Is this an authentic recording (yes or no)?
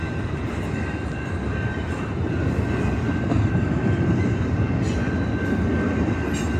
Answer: yes